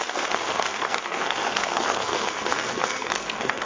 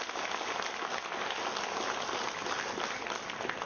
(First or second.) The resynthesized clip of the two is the first